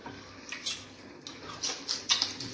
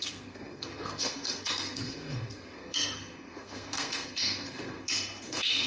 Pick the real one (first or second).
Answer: first